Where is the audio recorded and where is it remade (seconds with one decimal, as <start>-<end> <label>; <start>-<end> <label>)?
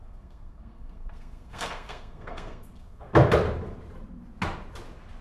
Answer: 0.0-3.1 remade; 3.1-5.2 recorded